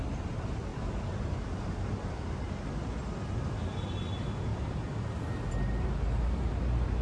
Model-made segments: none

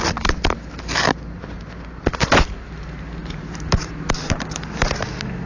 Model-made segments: none

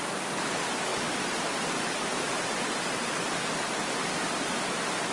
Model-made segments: none

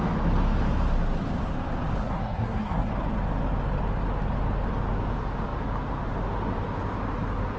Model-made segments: 2.0-2.9

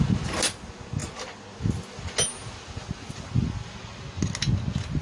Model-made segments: none